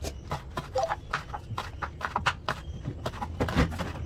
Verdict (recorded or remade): recorded